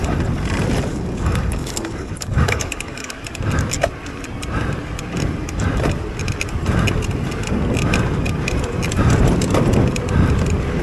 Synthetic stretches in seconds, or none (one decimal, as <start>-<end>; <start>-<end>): 0.9-3.2